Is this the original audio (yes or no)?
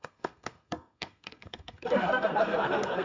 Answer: no